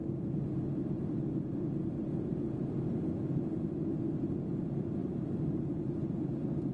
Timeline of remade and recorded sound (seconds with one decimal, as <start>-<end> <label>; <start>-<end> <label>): 0.0-6.7 recorded